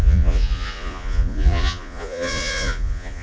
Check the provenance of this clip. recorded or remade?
remade